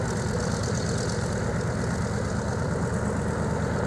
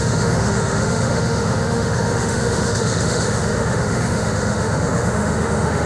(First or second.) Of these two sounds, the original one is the first